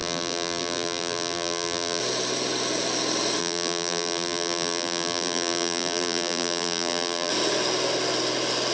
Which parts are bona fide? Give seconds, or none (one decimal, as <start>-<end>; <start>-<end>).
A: 2.0-3.4; 7.3-8.7